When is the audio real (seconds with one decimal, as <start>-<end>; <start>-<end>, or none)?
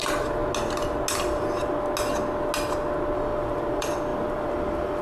0.4-3.4